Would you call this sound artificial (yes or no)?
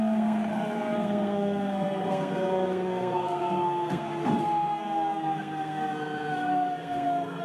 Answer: yes